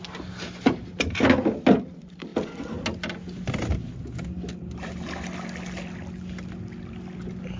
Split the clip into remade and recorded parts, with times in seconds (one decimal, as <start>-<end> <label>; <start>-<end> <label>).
0.0-7.6 recorded